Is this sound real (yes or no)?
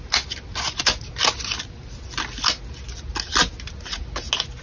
yes